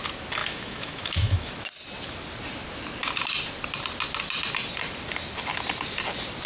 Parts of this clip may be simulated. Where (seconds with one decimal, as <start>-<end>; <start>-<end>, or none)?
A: 0.4-1.5